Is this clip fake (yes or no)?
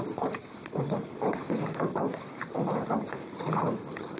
yes